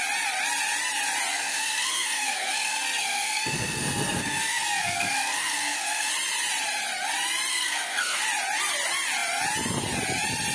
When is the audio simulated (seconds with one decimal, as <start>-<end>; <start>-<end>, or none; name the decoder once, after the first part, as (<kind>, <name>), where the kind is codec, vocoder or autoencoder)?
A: 1.3-6.1 (codec, SNAC); 7.5-8.2